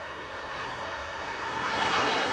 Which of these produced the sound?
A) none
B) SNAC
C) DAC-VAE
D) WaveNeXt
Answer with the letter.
B